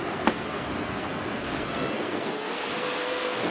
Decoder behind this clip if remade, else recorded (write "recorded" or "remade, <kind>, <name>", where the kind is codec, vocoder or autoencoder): remade, codec, SNAC